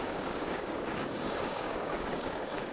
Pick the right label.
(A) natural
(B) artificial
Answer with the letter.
B